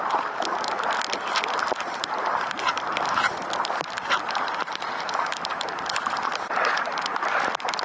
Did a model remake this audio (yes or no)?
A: no